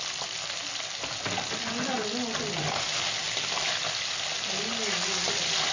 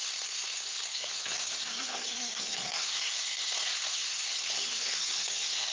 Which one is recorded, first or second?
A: first